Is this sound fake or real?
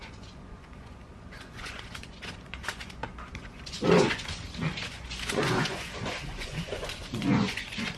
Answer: fake